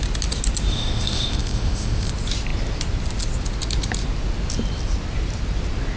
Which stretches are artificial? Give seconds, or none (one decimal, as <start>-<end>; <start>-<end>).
0.7-2.1